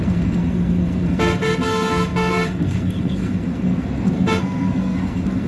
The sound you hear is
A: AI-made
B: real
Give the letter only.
A